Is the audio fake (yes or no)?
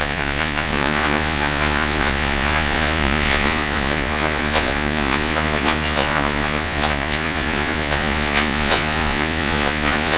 yes